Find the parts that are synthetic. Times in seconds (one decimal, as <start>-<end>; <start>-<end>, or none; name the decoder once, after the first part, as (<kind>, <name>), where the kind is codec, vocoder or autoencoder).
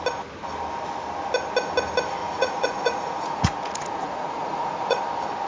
2.2-5.0 (vocoder, Vocos)